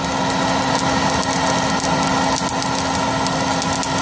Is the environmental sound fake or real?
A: real